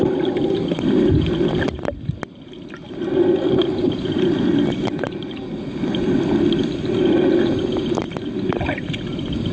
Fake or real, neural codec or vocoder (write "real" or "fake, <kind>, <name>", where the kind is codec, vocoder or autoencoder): real